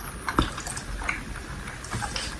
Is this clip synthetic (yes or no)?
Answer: no